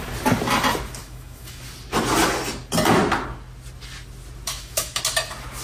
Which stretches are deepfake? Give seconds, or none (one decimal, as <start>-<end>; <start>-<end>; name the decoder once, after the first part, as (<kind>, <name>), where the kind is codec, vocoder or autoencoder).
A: 1.0-1.6 (autoencoder, DAC-VAE); 4.5-5.0